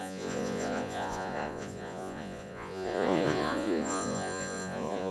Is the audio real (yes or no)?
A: no